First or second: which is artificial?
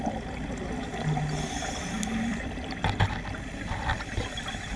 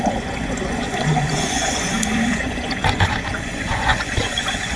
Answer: second